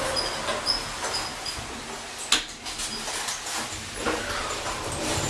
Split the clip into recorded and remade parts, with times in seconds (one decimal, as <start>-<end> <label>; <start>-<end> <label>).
0.0-4.4 recorded; 4.4-5.3 remade